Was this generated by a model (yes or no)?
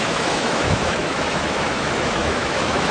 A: yes